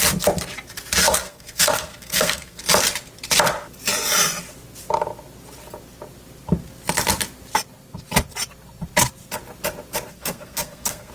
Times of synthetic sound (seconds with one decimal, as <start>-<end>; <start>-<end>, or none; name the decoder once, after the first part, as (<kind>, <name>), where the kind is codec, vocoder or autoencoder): 1.0-2.6 (codec, SNAC); 10.1-11.1